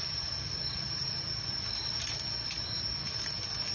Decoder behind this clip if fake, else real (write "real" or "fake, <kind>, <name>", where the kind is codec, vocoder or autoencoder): real